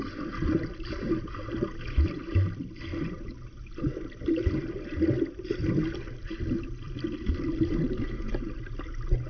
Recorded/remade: recorded